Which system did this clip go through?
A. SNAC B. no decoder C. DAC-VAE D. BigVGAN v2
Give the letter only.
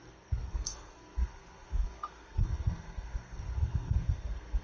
A